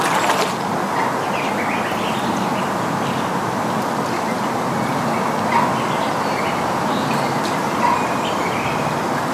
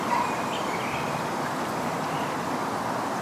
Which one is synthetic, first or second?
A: second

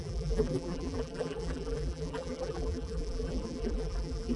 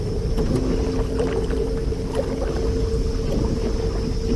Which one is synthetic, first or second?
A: first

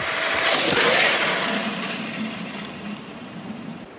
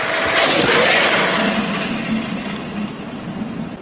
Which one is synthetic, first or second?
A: first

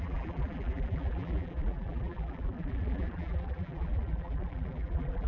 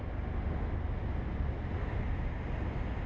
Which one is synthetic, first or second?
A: first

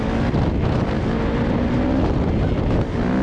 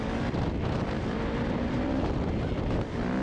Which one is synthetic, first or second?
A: second